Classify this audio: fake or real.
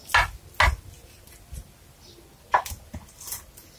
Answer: real